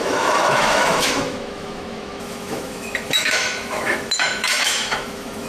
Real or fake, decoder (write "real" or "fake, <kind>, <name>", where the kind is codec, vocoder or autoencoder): fake, autoencoder, DAC-VAE